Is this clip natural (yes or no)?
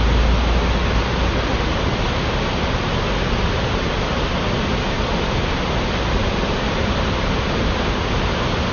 yes